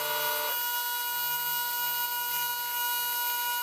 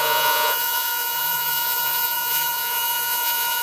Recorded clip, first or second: first